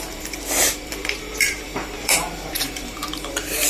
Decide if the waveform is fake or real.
fake